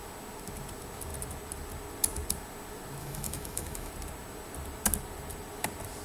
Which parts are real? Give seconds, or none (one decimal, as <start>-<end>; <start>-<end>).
0.0-3.0; 3.9-6.0